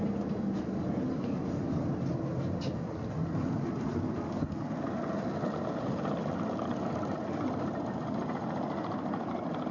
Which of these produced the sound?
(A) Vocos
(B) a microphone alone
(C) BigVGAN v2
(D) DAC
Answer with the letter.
B